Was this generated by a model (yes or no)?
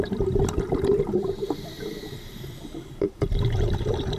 yes